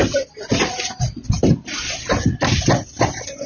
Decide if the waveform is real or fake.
real